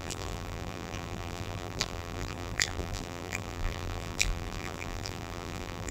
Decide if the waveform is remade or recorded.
remade